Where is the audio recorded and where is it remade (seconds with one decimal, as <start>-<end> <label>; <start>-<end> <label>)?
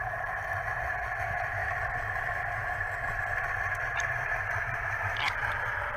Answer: 0.0-6.0 recorded